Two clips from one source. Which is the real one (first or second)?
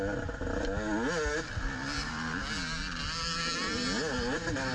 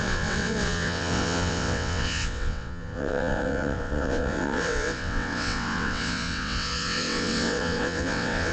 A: first